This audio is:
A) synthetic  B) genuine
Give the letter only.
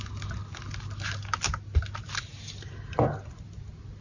B